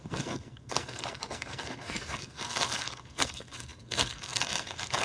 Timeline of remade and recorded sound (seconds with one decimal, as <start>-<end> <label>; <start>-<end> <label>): 0.0-5.0 remade